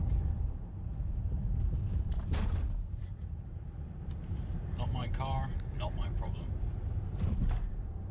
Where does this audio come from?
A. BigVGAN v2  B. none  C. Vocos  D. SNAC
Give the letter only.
A